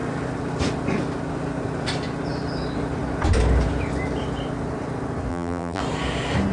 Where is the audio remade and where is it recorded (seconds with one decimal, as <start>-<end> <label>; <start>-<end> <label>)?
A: 0.0-5.3 recorded; 5.3-5.8 remade; 5.8-6.5 recorded